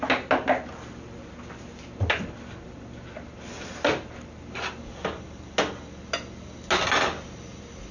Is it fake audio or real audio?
real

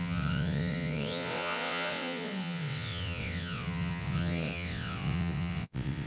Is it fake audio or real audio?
fake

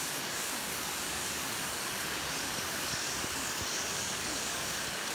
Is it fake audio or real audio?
fake